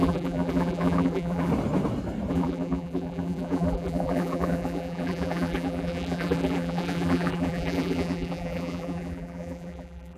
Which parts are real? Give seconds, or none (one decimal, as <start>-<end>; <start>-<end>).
1.5-2.3